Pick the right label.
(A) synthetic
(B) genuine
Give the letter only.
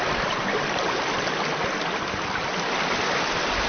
B